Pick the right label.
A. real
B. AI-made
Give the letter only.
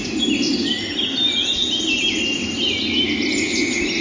A